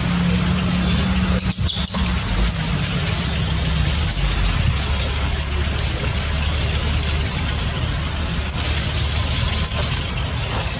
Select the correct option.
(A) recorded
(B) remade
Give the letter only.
A